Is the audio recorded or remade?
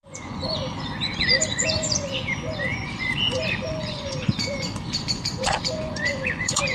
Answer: remade